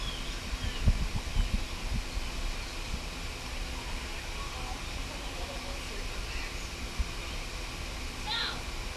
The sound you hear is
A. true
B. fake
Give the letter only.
A